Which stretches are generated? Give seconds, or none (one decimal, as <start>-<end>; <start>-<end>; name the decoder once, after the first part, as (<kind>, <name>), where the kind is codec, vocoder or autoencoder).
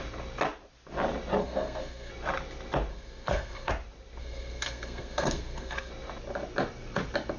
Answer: 1.4-2.1 (codec, SNAC); 2.9-3.7; 4.2-5.9